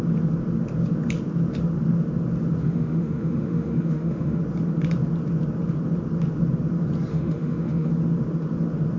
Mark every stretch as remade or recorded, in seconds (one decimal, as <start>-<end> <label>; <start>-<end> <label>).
0.0-2.6 recorded; 2.6-4.4 remade; 4.4-7.1 recorded; 7.1-7.9 remade; 7.9-9.0 recorded